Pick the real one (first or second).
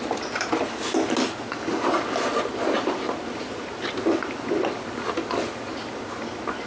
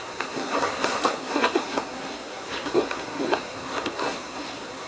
first